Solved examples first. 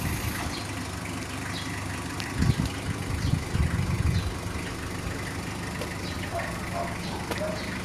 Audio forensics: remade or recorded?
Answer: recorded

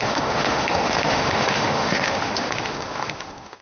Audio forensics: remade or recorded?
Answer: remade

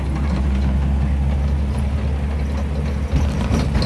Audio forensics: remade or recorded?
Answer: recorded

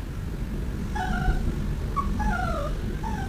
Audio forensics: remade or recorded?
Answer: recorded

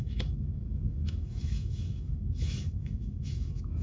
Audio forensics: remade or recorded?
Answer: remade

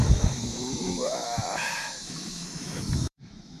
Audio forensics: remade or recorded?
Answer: remade